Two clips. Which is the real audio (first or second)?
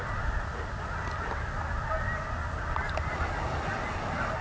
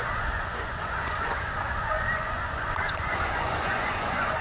first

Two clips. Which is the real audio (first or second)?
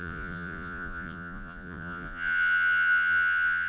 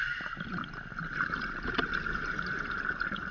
second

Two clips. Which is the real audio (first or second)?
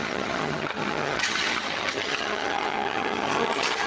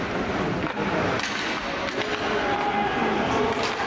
second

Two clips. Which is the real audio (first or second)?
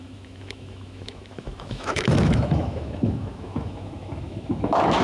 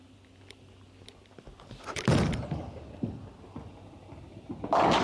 second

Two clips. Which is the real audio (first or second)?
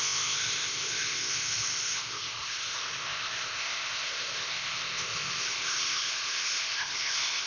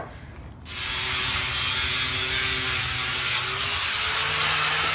second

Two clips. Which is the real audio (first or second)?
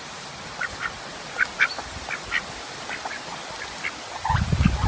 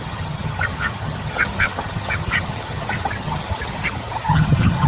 first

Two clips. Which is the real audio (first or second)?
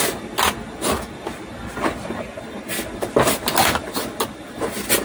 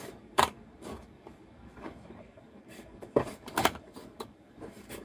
first